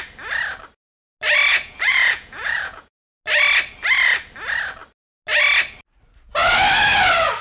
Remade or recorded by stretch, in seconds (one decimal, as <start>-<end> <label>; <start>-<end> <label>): 0.0-1.5 recorded; 1.5-2.9 remade; 2.9-7.4 recorded